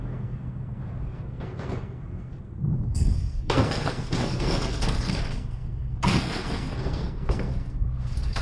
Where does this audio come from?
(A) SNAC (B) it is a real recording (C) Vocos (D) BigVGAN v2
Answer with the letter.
A